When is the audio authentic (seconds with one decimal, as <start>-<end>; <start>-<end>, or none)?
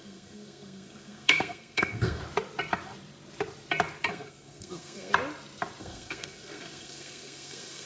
2.2-4.1; 5.1-5.8